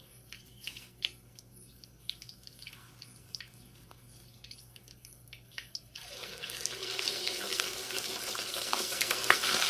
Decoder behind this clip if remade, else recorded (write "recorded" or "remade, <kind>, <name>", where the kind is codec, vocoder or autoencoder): remade, codec, SNAC